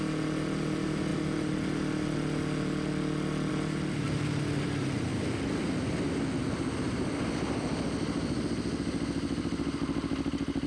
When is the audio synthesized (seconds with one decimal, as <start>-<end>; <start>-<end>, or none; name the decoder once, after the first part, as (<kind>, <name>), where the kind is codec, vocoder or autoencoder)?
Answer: 5.1-5.7 (vocoder, BigVGAN v2)